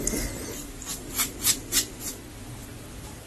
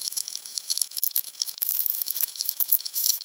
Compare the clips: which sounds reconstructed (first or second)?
second